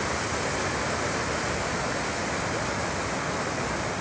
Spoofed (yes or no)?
no